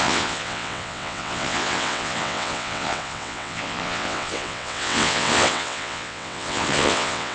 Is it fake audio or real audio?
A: fake